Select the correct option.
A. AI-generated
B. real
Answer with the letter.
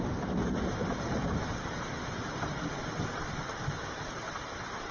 B